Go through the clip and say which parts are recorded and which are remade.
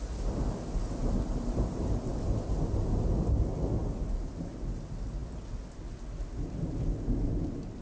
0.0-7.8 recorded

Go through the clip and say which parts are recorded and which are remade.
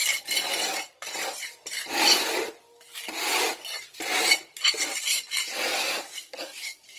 0.0-5.7 recorded; 5.7-7.0 remade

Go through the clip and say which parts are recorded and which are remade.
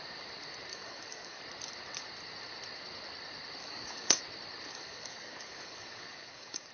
0.0-0.7 recorded; 0.7-1.4 remade; 1.4-3.6 recorded; 3.6-4.2 remade; 4.2-4.7 recorded; 4.7-6.7 remade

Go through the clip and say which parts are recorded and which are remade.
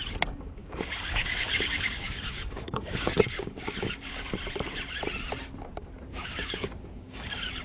0.0-0.6 recorded; 0.6-4.3 remade; 4.3-6.1 recorded; 6.1-7.6 remade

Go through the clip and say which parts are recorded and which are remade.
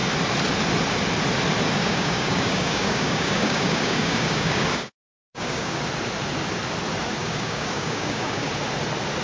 0.0-1.8 recorded; 1.8-5.8 remade; 5.8-7.2 recorded; 7.2-8.5 remade; 8.5-9.2 recorded